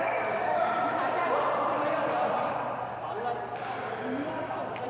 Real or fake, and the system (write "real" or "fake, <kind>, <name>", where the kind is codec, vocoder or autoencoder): fake, vocoder, BigVGAN v2